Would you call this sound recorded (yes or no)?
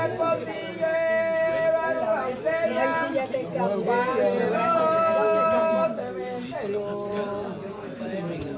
yes